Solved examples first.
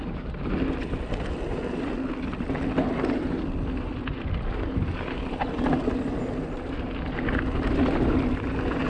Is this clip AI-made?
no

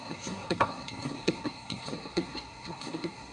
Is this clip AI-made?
yes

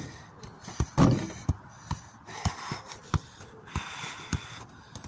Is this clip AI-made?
no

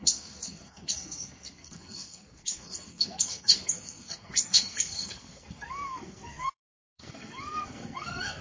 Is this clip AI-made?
yes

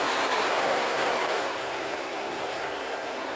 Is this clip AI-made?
yes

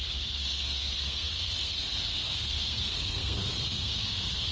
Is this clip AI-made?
yes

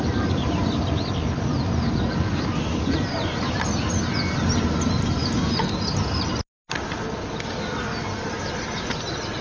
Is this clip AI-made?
no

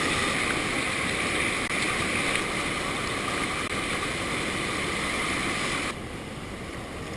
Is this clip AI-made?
no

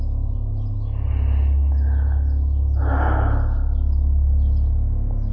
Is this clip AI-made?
no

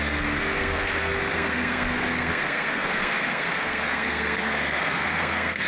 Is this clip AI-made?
yes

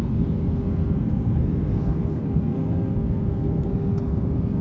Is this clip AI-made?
yes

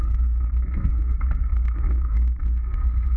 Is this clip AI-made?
yes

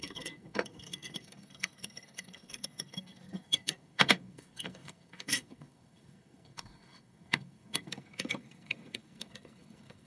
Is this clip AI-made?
yes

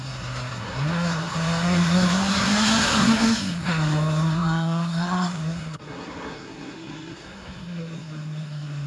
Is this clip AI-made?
yes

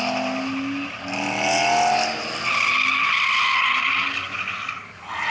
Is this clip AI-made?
no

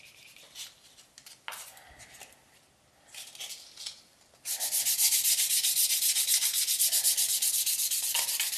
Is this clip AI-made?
no